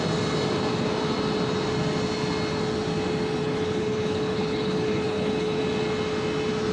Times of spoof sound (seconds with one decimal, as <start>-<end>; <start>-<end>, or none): 3.4-5.6